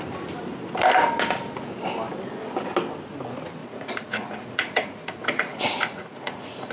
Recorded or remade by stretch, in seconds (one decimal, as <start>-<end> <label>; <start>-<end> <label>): 0.0-3.6 recorded; 3.6-6.7 remade